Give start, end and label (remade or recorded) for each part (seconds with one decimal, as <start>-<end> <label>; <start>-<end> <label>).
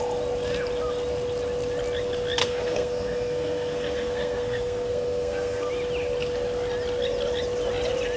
0.0-2.4 recorded; 2.4-5.7 remade; 5.7-8.2 recorded